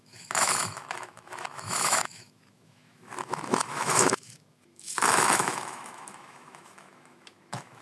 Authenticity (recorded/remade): remade